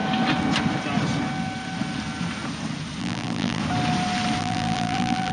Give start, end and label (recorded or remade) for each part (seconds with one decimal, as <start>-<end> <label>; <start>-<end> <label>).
0.0-3.0 recorded; 3.0-3.6 remade; 3.6-4.4 recorded; 4.4-5.3 remade